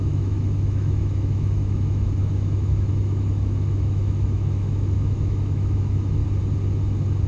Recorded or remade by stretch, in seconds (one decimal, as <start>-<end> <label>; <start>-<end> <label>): 0.0-6.2 remade; 6.2-7.3 recorded